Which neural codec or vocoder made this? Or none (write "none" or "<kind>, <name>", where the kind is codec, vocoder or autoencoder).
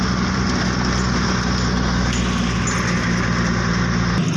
none